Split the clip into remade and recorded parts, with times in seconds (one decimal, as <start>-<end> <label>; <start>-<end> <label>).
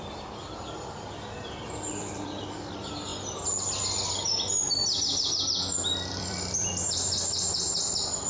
0.0-3.1 remade; 3.1-4.1 recorded; 4.1-4.8 remade; 4.8-6.1 recorded; 6.1-8.3 remade